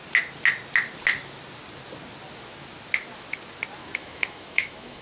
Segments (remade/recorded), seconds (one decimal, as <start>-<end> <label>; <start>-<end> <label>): 0.0-3.8 recorded; 3.8-5.0 remade